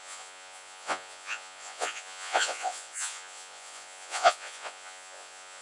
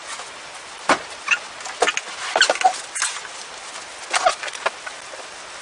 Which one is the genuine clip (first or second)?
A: second